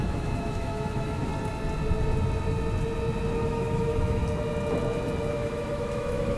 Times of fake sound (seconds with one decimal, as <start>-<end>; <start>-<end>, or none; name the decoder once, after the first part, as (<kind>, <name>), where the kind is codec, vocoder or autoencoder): 0.0-1.3 (autoencoder, DAC-VAE); 3.4-4.2; 5.3-6.4